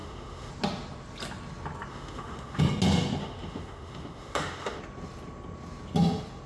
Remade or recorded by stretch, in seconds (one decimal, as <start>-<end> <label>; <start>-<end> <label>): 0.0-0.5 remade; 0.5-1.9 recorded; 1.9-2.6 remade; 2.6-3.2 recorded; 3.2-4.8 remade; 4.8-6.5 recorded